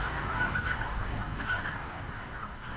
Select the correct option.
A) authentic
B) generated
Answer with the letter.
B